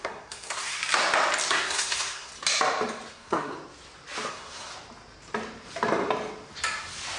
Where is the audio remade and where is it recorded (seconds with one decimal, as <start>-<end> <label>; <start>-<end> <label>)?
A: 0.0-0.8 remade; 0.8-1.5 recorded; 1.5-2.3 remade; 2.3-3.1 recorded; 3.1-3.5 remade; 3.5-4.3 recorded; 4.3-4.7 remade; 4.7-7.2 recorded